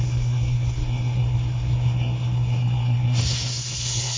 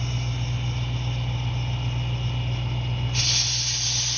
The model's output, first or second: first